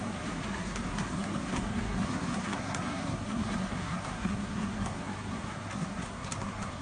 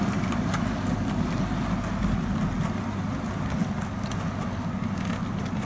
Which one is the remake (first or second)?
first